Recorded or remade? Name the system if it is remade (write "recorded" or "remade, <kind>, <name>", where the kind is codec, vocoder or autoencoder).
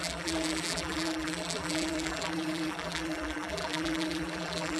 remade, vocoder, BigVGAN v2